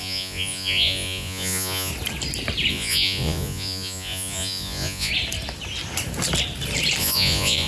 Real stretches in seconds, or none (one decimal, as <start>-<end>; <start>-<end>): 1.9-2.7; 5.1-7.0